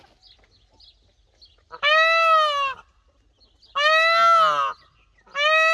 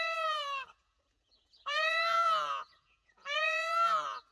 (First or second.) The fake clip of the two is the second